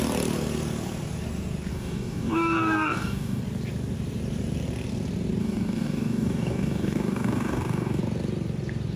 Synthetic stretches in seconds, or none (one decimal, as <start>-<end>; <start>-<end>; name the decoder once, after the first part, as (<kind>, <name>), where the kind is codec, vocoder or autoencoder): 1.7-3.4 (codec, DAC); 5.4-8.0